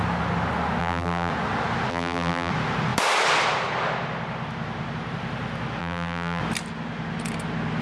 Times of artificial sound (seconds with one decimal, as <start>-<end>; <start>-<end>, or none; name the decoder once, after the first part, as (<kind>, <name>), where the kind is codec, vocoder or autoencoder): 0.8-1.3 (vocoder, BigVGAN v2); 1.9-2.5; 5.8-6.4